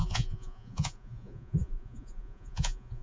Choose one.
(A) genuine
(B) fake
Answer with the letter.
B